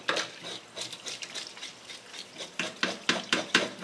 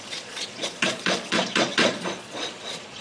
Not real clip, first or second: second